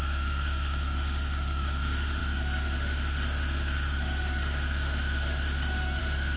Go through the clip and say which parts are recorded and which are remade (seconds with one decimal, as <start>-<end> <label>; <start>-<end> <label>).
0.0-6.4 remade